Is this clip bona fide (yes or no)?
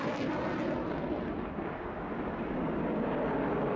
yes